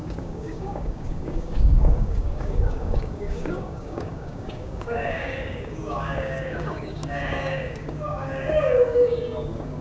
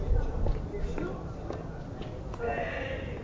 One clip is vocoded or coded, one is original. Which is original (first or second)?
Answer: second